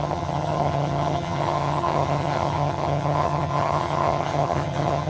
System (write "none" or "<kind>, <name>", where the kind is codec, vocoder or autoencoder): vocoder, HiFi-GAN